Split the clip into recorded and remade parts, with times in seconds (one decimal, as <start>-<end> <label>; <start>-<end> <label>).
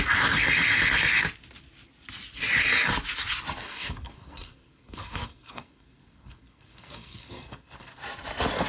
0.0-3.6 recorded; 3.6-8.0 remade; 8.0-8.7 recorded